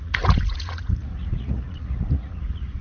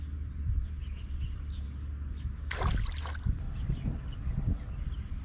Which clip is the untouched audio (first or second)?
second